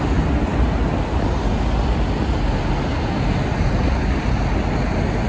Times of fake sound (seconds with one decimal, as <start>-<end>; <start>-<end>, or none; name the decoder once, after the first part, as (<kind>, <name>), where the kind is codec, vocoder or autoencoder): none